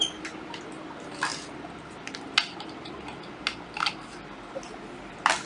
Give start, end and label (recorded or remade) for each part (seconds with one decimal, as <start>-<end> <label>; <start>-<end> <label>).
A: 0.0-5.5 recorded